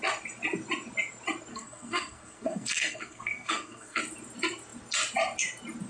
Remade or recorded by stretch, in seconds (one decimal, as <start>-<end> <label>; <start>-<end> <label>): 0.0-1.5 recorded; 1.5-4.0 remade; 4.0-5.9 recorded